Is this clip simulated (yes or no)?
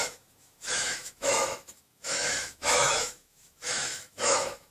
yes